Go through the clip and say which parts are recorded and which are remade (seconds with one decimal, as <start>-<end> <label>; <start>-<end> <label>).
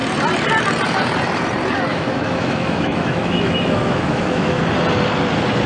0.0-1.9 recorded; 1.9-4.6 remade; 4.6-5.7 recorded